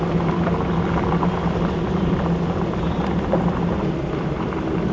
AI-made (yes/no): no